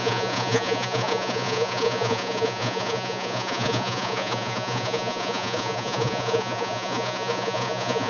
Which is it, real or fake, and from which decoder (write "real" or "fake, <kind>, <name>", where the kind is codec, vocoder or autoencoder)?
fake, vocoder, Vocos